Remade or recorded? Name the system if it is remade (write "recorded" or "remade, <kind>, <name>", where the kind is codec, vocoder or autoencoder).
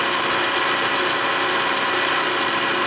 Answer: recorded